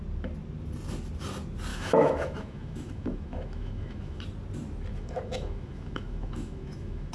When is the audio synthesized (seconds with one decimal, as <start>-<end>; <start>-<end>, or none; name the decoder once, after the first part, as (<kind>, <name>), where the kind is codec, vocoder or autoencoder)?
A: 1.7-4.2 (autoencoder, DAC-VAE); 4.9-7.1